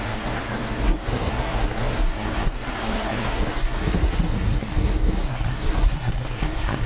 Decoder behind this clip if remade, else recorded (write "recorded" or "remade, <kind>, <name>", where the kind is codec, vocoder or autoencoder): remade, codec, SNAC